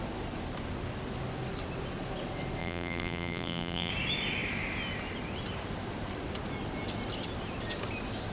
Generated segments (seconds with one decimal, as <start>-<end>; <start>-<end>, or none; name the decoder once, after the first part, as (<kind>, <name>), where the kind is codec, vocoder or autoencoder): 2.6-3.9 (vocoder, BigVGAN v2)